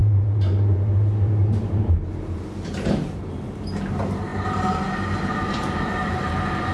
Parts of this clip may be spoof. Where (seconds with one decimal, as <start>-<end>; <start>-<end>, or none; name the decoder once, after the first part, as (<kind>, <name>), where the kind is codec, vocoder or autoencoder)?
0.0-6.7 (vocoder, BigVGAN v2)